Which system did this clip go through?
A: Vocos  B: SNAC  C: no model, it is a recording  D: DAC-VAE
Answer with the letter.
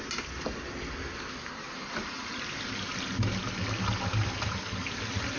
C